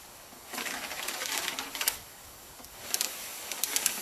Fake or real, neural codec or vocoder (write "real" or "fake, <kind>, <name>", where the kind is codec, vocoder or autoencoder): fake, codec, DAC